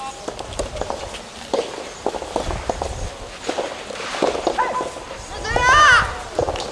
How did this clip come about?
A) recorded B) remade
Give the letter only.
A